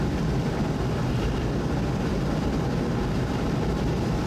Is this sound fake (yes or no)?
no